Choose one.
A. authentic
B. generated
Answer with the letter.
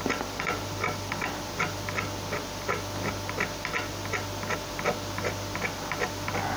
A